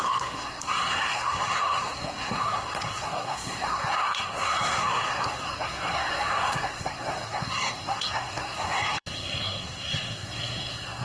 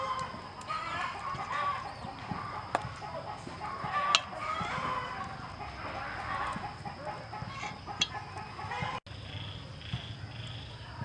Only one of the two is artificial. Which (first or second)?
first